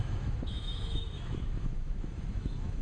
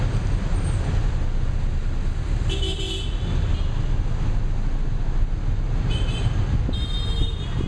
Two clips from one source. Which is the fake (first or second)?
first